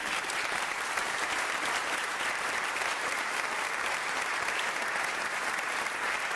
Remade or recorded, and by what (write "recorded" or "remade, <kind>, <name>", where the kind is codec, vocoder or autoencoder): remade, vocoder, BigVGAN v2